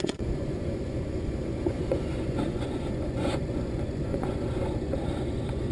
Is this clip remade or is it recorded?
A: remade